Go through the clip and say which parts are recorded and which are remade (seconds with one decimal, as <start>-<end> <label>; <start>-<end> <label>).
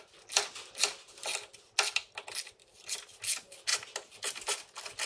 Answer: 0.0-5.1 recorded